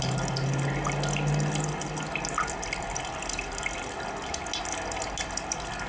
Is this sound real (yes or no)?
yes